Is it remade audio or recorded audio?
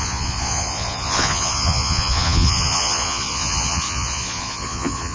remade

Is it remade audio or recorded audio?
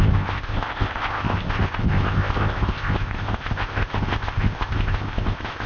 remade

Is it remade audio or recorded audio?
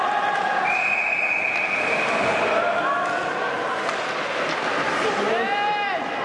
recorded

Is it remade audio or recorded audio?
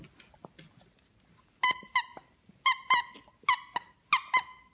recorded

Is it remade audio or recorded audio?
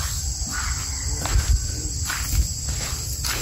recorded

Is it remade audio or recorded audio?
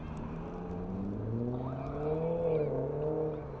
recorded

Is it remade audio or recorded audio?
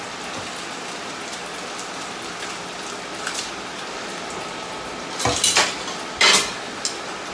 recorded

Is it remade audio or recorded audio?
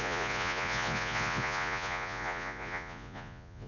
remade